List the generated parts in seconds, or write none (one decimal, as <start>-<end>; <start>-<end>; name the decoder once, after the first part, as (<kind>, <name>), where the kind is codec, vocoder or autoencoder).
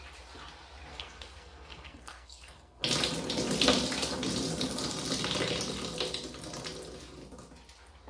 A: 0.9-2.8 (codec, SNAC)